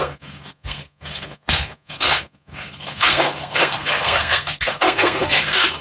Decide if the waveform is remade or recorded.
remade